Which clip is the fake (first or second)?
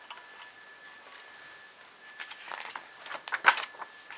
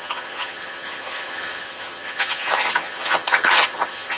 second